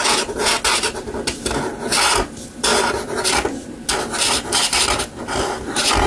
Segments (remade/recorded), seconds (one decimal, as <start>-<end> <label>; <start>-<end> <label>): 0.0-6.1 recorded